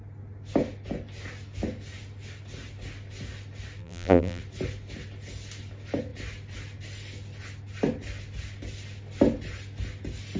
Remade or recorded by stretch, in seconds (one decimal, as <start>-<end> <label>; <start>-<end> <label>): 0.0-3.8 recorded; 3.8-4.4 remade; 4.4-10.4 recorded